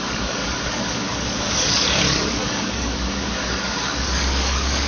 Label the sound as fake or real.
fake